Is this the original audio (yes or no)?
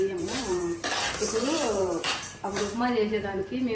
no